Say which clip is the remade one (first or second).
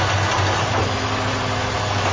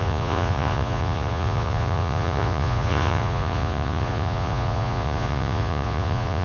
second